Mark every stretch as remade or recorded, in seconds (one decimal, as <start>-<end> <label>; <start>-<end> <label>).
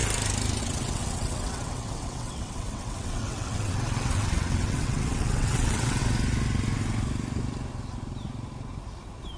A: 0.0-0.6 recorded; 0.6-6.0 remade; 6.0-9.4 recorded